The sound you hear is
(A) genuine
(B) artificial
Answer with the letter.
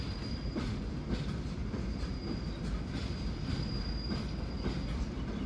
A